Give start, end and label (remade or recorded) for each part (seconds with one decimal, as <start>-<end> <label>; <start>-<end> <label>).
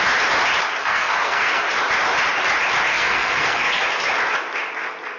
0.0-0.8 recorded; 0.8-1.7 remade; 1.7-2.9 recorded; 2.9-3.8 remade; 3.8-5.2 recorded